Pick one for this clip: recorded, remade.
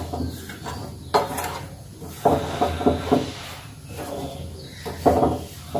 recorded